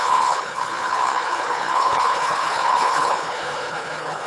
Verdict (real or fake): fake